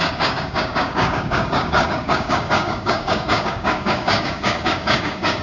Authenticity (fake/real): fake